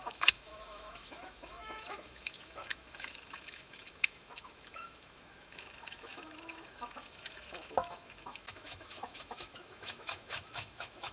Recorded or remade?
remade